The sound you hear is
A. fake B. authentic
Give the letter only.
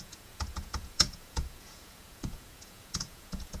A